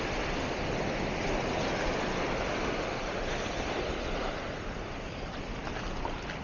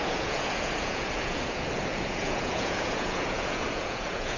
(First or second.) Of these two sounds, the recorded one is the first